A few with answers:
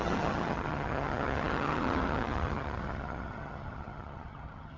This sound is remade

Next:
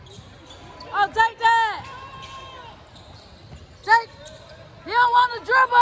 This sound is recorded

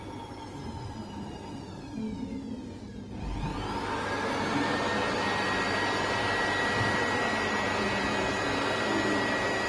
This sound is recorded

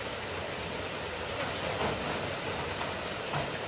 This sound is recorded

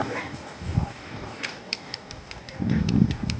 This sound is remade